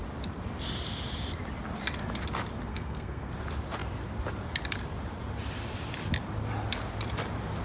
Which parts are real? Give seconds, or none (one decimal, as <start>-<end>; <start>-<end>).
0.0-2.7; 3.3-7.6